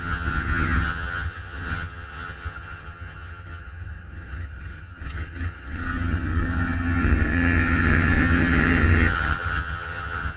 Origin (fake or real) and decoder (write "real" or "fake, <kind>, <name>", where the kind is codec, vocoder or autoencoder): fake, vocoder, HiFi-GAN